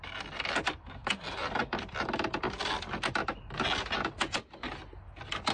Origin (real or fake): real